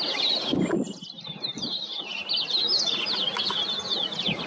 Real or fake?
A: real